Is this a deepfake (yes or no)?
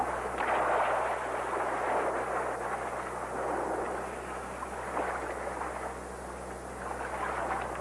no